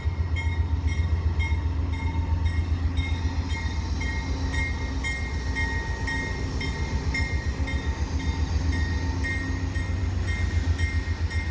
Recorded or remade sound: recorded